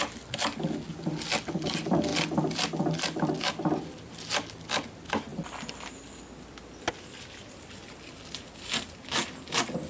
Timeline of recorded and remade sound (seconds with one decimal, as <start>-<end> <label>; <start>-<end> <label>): 0.0-9.9 recorded